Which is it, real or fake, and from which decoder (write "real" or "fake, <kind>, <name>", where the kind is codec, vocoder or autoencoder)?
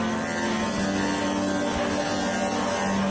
real